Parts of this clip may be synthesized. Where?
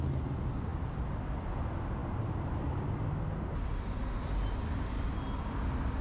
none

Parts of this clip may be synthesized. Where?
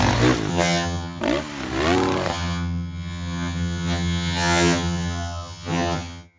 0.5-1.2 (vocoder, HiFi-GAN); 2.3-6.4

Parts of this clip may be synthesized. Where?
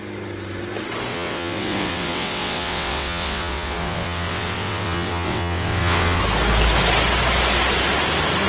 1.1-6.2 (vocoder, WaveNeXt)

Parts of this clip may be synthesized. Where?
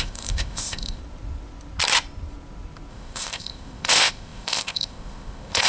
0.0-1.0 (codec, ZipCodec); 2.9-5.7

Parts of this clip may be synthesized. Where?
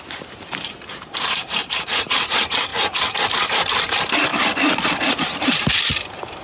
0.0-2.7 (vocoder, BigVGAN v2); 3.3-4.3; 5.1-6.4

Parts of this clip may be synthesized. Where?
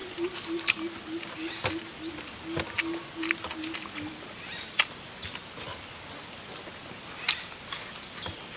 none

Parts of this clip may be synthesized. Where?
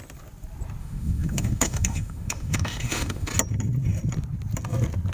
0.8-3.3 (autoencoder, DAC-VAE)